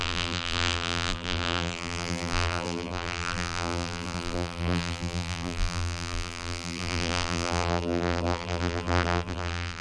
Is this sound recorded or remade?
remade